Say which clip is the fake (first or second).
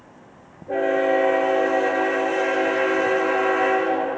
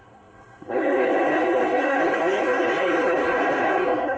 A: second